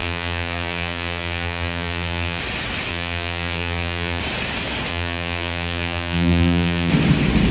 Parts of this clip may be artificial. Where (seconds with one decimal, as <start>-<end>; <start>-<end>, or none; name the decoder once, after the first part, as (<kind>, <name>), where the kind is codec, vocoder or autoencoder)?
0.0-2.4 (vocoder, BigVGAN v2); 2.9-4.2; 4.9-6.9